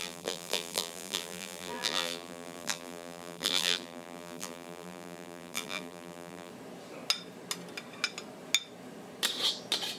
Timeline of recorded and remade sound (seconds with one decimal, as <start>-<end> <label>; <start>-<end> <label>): 0.0-6.5 remade; 6.5-10.0 recorded